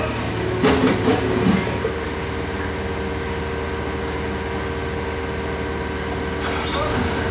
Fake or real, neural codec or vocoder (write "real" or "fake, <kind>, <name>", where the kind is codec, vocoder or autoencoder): real